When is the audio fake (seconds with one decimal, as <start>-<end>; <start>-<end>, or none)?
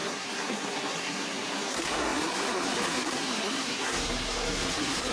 0.0-5.1